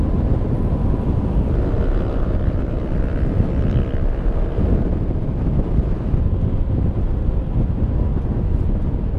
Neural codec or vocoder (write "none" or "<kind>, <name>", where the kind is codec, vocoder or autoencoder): none